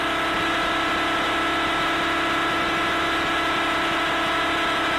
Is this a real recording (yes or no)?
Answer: yes